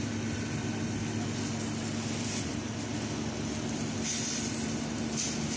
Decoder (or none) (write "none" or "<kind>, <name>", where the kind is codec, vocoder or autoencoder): none